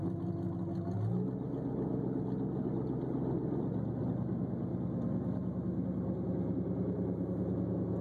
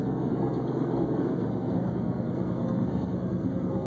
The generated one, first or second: second